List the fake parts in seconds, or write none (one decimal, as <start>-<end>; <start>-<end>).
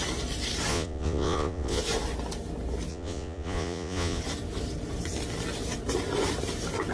0.7-1.8; 2.9-4.2